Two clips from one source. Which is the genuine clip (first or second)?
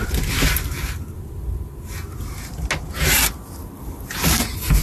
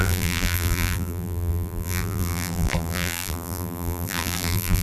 first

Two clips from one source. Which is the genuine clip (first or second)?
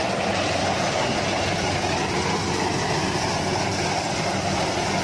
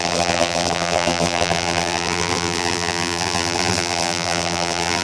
first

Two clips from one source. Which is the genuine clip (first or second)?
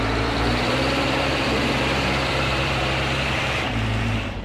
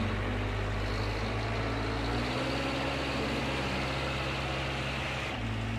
second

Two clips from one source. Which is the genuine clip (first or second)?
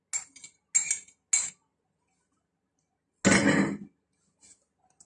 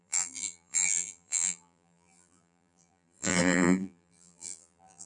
first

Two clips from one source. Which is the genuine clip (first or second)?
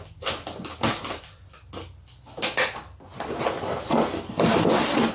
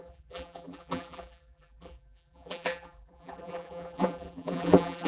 first